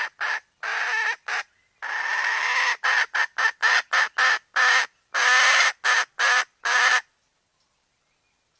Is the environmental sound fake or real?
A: real